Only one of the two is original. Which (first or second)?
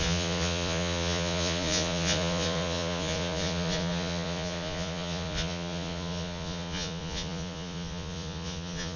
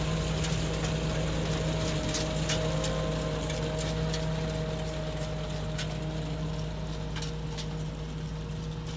second